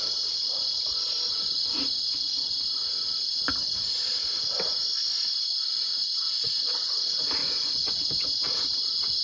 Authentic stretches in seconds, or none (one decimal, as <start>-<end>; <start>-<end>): 0.0-1.4; 2.5-5.7; 6.9-7.4; 8.0-9.2